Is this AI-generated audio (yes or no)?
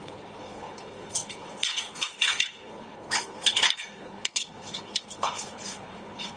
yes